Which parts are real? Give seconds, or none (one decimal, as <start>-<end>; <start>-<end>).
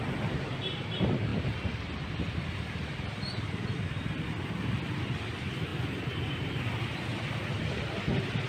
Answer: 0.0-8.5